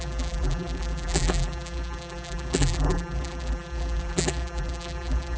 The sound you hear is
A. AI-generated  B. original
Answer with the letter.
A